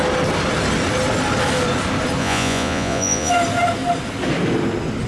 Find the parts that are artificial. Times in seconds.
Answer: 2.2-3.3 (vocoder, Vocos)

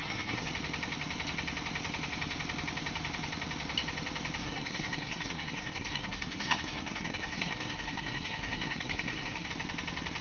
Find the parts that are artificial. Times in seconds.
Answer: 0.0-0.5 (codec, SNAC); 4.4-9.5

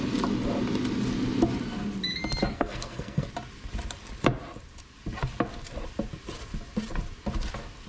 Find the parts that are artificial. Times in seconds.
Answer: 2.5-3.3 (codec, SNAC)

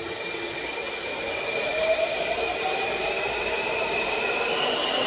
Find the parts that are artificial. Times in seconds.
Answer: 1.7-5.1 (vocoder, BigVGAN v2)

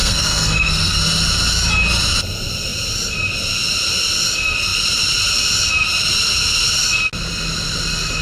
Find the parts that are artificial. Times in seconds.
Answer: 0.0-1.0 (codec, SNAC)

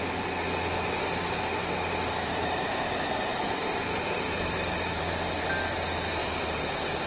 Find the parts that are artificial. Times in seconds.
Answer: 1.6-2.7 (vocoder, BigVGAN v2); 3.3-5.0; 6.2-7.1

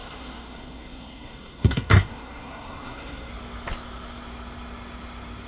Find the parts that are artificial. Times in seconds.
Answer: 0.0-3.3 (codec, SNAC)